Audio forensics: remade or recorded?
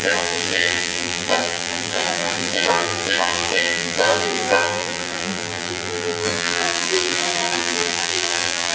remade